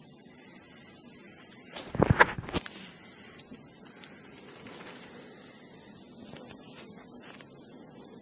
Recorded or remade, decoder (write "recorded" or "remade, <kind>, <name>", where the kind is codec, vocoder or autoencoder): recorded